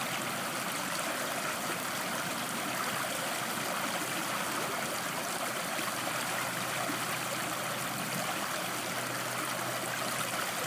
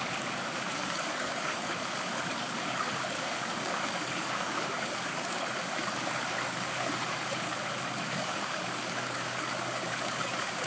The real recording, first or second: first